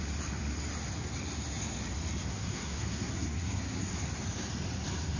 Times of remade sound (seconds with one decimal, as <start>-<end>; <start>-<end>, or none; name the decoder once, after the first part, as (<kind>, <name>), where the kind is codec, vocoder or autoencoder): 2.3-4.0 (codec, SNAC)